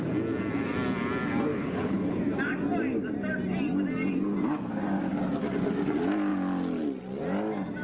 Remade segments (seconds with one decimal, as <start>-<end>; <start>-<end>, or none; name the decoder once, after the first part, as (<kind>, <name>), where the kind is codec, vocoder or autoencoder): 1.5-2.2 (codec, HILCodec)